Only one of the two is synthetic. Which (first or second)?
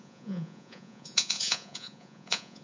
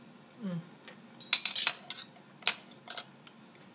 first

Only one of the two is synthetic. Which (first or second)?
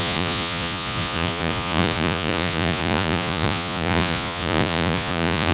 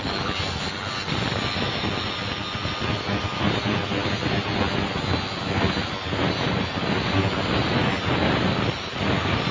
first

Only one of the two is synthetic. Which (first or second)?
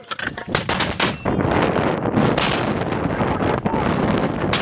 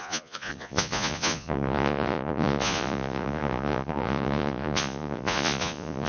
second